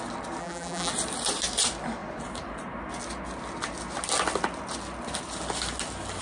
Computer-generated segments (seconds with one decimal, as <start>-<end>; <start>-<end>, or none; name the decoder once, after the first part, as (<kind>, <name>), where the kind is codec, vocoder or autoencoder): 0.4-0.9 (vocoder, BigVGAN v2)